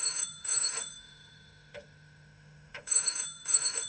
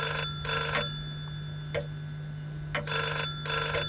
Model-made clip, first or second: first